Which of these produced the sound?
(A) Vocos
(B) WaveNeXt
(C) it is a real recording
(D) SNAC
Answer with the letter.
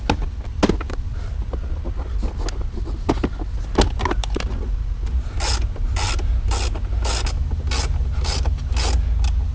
C